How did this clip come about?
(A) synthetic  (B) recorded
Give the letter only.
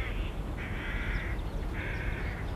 B